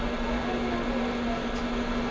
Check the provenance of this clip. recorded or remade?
recorded